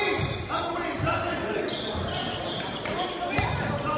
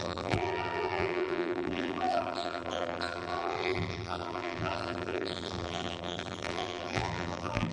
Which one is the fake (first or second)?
second